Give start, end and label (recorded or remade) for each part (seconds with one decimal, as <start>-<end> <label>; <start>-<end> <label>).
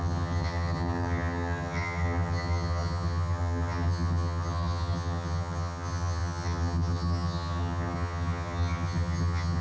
0.0-9.6 remade